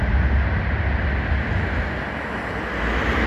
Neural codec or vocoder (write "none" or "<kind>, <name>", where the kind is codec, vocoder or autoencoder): none